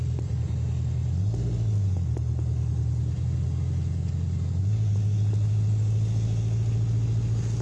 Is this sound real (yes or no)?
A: yes